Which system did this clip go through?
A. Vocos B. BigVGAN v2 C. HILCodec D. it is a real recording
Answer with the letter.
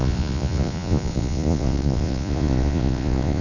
A